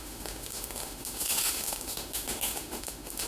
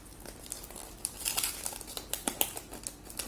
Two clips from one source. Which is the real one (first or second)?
second